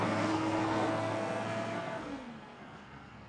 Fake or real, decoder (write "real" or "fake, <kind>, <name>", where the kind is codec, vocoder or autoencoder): fake, codec, SNAC